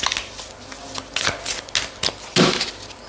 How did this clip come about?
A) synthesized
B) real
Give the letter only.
B